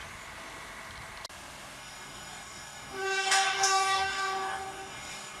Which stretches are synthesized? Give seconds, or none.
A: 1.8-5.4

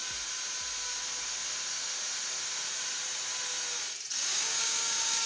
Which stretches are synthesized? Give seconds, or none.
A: 4.3-5.3

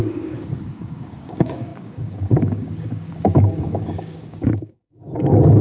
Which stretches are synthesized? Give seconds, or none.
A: 0.0-5.6

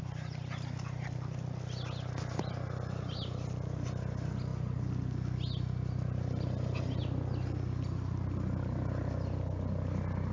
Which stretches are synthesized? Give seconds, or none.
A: none

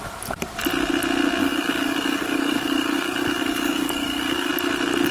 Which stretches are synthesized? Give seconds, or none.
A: 1.4-4.5

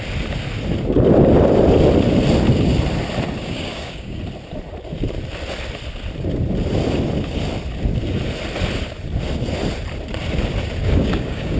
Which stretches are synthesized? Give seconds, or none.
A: 3.4-4.2; 10.8-11.6

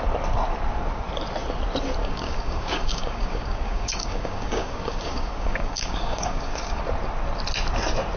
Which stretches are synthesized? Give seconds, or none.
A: 2.0-6.8